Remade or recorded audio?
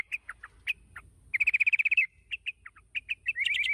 recorded